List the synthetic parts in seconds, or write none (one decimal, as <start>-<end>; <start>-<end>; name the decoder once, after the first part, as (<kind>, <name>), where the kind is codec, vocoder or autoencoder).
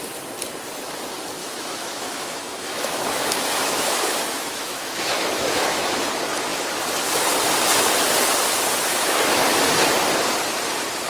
1.4-6.1 (autoencoder, DAC-VAE); 8.9-9.4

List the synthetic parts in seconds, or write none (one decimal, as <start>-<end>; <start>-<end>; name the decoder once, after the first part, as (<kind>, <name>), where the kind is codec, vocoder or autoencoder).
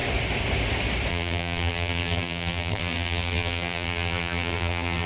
1.1-5.1 (vocoder, BigVGAN v2)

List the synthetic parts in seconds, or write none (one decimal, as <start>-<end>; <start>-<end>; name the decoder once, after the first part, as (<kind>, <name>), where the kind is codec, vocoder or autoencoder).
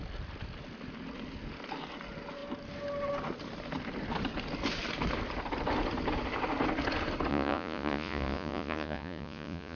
7.3-9.8 (vocoder, Vocos)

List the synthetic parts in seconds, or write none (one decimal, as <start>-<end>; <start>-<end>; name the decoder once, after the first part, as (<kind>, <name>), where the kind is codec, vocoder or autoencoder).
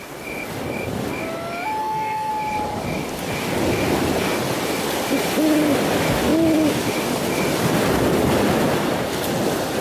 1.8-2.3 (codec, SNAC)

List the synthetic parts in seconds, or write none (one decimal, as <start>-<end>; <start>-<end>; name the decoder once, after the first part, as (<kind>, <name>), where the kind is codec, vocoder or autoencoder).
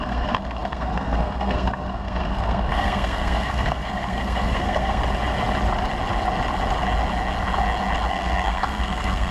0.0-5.0 (codec, SNAC); 8.1-9.3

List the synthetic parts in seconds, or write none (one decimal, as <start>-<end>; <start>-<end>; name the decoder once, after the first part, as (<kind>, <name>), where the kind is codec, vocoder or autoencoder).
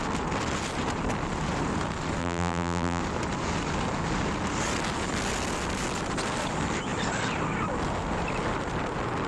2.2-3.0 (vocoder, BigVGAN v2)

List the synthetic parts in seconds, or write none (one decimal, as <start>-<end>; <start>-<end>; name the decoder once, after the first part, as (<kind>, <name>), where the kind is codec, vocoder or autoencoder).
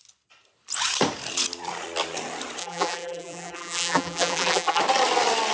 2.6-4.8 (vocoder, BigVGAN v2)